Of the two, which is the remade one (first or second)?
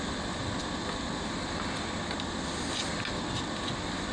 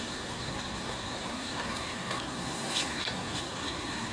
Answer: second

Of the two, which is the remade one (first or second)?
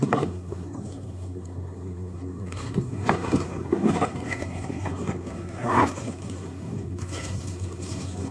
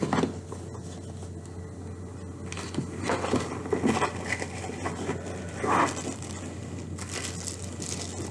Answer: first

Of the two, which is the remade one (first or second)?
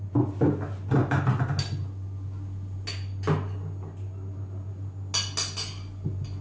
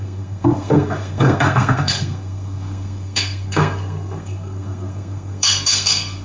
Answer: second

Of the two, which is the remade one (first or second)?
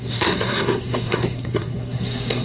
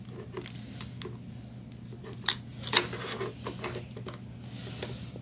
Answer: first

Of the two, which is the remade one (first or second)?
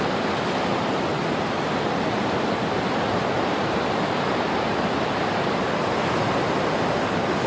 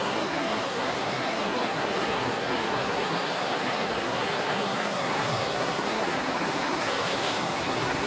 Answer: second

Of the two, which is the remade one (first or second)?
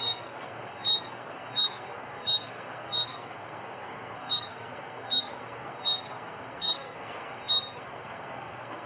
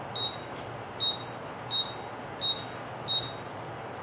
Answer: first